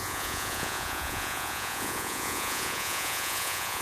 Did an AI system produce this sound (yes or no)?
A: yes